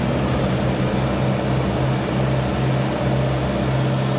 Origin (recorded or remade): recorded